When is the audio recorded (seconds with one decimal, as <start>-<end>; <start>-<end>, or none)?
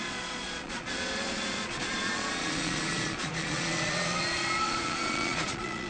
none